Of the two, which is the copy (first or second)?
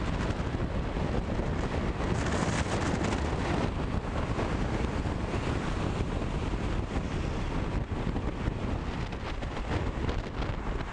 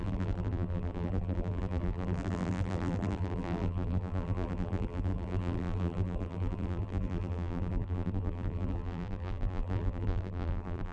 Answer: second